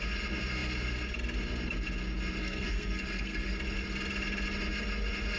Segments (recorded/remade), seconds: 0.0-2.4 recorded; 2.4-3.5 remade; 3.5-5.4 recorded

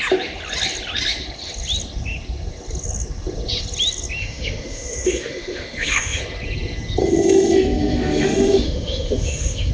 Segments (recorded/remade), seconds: 0.0-4.2 recorded; 4.2-6.2 remade; 6.2-7.0 recorded; 7.0-9.7 remade

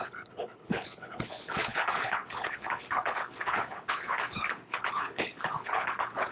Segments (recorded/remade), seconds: 0.0-6.3 remade

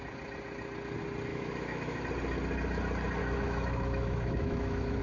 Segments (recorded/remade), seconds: 0.0-1.3 recorded; 1.3-2.0 remade; 2.0-3.2 recorded; 3.2-5.0 remade

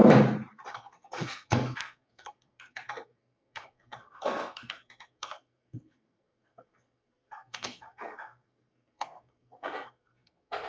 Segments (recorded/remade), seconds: 0.0-0.7 recorded; 0.7-10.7 remade

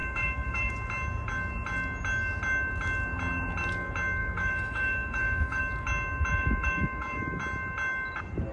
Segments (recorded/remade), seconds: 0.0-0.7 remade; 0.7-4.2 recorded; 4.2-5.6 remade; 5.6-6.3 recorded; 6.3-7.4 remade; 7.4-8.5 recorded

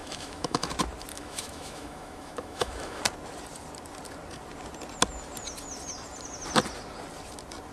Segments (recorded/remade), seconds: 0.0-0.7 remade; 0.7-1.1 recorded; 1.1-3.0 remade; 3.0-7.7 recorded